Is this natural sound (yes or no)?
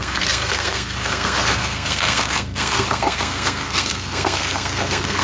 no